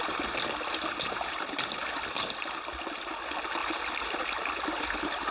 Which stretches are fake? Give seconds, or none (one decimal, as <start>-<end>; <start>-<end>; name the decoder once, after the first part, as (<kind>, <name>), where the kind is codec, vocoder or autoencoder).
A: none

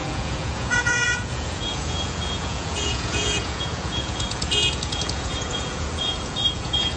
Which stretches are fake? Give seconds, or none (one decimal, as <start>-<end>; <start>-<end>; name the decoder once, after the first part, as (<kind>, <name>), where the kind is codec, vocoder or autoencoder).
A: 0.0-7.0 (vocoder, Vocos)

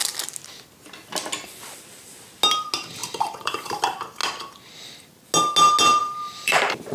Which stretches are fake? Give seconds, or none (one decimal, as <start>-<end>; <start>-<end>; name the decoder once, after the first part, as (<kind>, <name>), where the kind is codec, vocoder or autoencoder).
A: 3.0-3.8 (vocoder, BigVGAN v2); 6.0-6.9

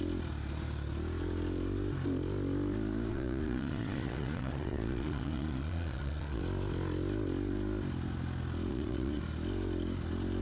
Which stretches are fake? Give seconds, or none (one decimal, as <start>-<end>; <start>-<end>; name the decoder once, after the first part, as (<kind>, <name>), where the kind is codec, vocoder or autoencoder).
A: 3.1-6.4 (vocoder, Vocos); 8.7-9.2

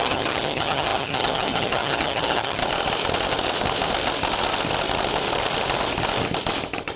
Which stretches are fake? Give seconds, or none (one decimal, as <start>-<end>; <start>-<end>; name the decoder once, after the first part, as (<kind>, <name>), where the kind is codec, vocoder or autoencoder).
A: 0.0-2.6 (vocoder, HiFi-GAN)